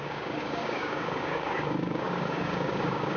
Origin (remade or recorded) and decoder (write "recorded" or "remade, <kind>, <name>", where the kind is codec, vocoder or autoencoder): remade, codec, DAC